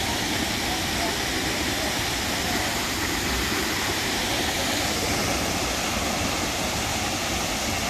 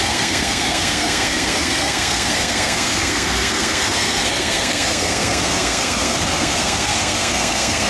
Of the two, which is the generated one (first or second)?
second